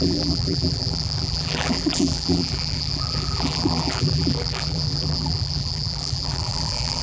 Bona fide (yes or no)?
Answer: no